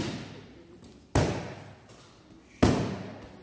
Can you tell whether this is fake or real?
real